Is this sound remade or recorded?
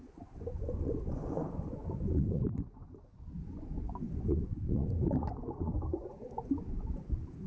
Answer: remade